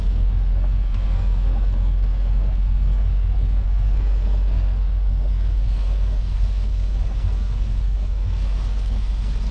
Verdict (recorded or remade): remade